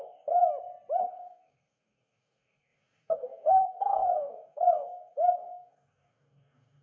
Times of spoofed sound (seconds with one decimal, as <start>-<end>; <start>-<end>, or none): 0.0-0.4; 1.0-6.8